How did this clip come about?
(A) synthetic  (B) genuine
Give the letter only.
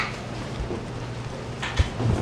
B